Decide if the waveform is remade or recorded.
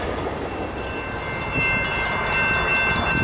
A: recorded